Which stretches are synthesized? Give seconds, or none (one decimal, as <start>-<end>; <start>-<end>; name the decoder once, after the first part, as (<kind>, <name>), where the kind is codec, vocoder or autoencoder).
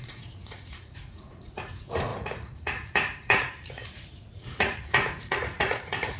0.0-6.2 (vocoder, Vocos)